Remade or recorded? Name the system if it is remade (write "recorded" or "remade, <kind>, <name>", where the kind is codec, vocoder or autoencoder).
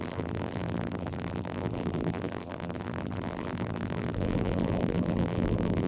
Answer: remade, vocoder, BigVGAN v2